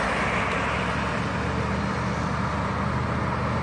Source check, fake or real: real